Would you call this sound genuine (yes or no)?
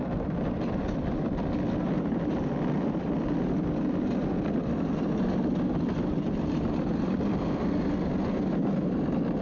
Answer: yes